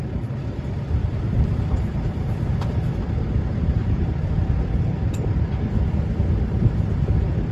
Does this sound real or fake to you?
real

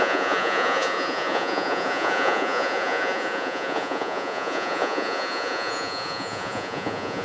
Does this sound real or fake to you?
fake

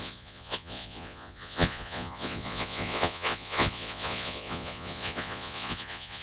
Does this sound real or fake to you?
fake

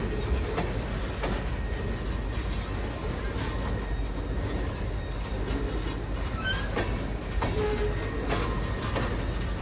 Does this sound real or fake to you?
real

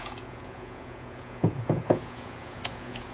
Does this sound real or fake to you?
fake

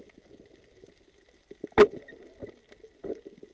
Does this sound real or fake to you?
real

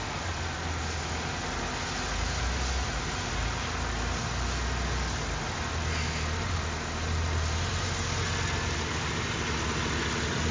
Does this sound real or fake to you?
real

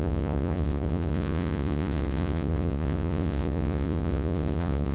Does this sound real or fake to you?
fake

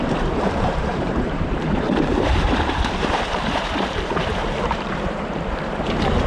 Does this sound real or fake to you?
fake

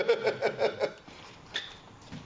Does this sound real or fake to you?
real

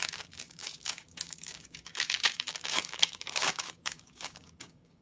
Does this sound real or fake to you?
fake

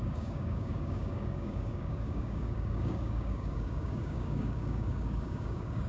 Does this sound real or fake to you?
fake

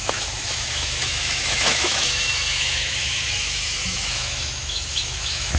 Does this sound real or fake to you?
fake